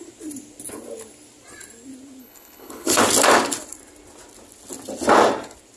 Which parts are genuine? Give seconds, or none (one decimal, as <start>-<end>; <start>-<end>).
0.0-2.2; 3.0-5.8